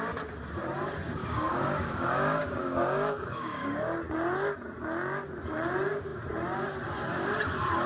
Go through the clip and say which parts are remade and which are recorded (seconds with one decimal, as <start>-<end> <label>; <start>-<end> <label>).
0.0-1.2 recorded; 1.2-3.8 remade; 3.8-7.9 recorded